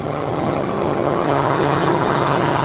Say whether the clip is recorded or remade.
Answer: remade